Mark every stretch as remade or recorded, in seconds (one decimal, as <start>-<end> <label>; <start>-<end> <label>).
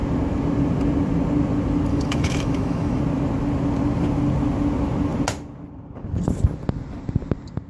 0.0-1.9 recorded; 1.9-3.0 remade; 3.0-7.7 recorded